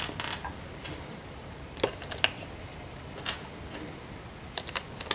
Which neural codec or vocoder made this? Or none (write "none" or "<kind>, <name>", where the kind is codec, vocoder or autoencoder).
none